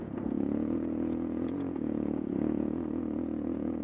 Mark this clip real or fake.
fake